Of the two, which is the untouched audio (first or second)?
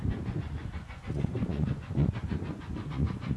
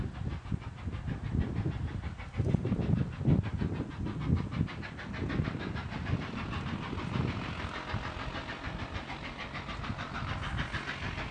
second